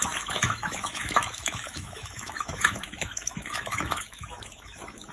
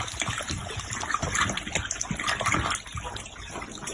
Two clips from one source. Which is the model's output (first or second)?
first